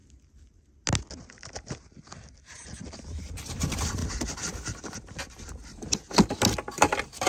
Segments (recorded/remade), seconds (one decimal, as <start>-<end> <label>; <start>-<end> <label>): 0.0-2.4 recorded; 2.4-4.0 remade; 4.0-7.3 recorded